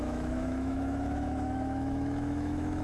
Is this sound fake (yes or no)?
yes